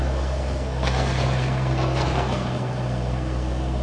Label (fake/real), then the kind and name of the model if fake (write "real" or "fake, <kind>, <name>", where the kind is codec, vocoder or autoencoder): fake, codec, SNAC